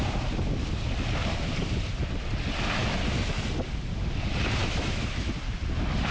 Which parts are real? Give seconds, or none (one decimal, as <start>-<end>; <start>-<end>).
0.0-4.6; 5.3-6.1

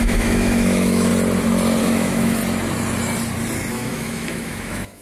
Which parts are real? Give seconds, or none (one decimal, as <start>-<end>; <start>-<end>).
1.1-1.8; 2.4-3.7

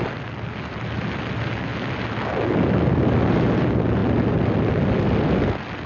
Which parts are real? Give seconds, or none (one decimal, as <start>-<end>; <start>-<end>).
0.0-5.9

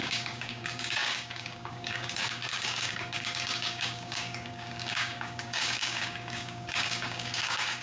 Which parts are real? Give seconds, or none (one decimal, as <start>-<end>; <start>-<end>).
none